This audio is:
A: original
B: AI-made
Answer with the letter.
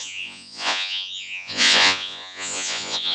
B